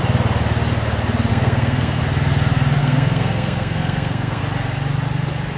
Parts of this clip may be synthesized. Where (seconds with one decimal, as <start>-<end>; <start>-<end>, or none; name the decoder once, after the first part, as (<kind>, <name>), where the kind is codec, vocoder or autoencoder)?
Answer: 1.3-2.0 (codec, SNAC); 2.8-4.4